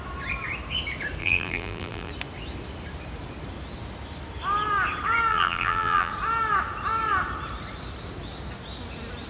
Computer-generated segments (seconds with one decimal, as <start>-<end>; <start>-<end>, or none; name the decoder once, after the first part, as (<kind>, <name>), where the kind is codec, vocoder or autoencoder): 1.2-2.1 (vocoder, BigVGAN v2); 5.3-6.1